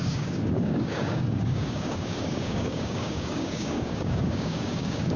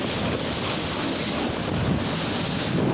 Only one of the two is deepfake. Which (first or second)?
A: first